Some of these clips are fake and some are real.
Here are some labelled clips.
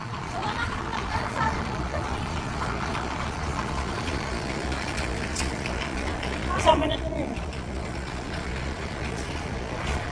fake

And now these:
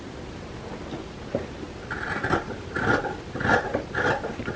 real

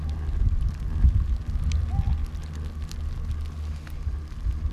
real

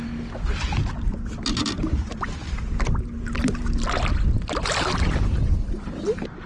real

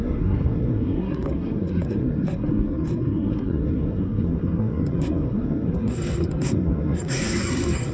fake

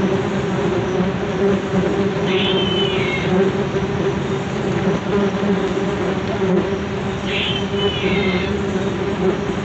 real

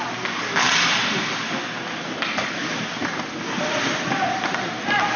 real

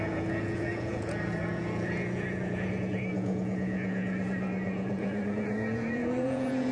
fake